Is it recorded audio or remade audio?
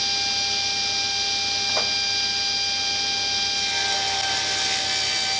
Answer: recorded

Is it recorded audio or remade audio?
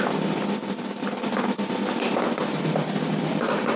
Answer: recorded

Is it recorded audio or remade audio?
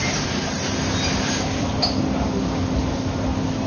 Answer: recorded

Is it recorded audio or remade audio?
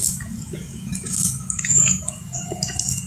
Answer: remade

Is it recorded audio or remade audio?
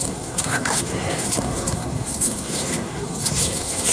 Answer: remade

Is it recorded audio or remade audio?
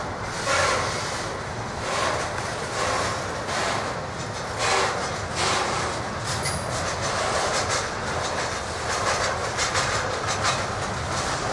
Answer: recorded